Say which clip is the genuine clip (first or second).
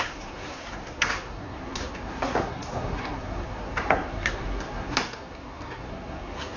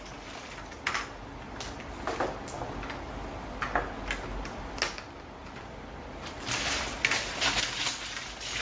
second